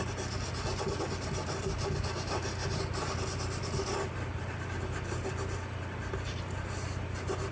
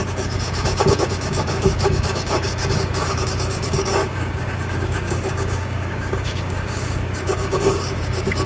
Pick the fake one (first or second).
second